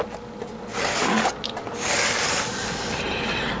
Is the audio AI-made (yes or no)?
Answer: no